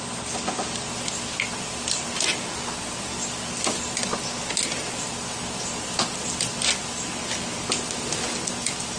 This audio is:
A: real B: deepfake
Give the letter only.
A